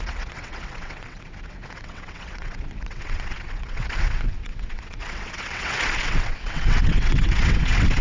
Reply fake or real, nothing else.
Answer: fake